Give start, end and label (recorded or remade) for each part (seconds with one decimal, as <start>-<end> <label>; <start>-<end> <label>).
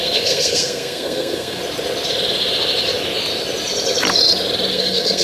0.0-1.6 remade; 1.6-4.7 recorded; 4.7-5.2 remade